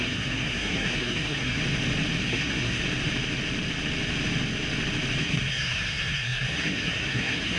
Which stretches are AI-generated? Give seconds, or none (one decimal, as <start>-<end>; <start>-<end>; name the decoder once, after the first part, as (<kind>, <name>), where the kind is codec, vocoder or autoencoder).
0.0-1.6 (codec, SNAC); 2.2-2.8; 5.2-7.6